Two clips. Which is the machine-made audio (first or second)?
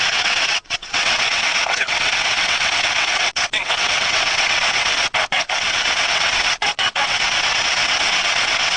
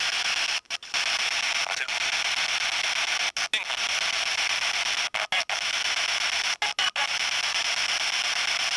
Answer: first